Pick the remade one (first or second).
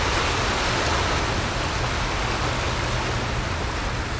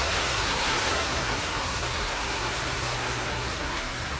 second